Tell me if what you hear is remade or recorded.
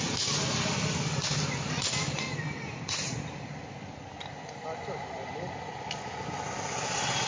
recorded